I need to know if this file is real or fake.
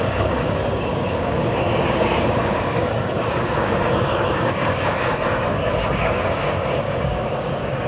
fake